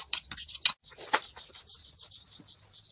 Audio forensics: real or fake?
real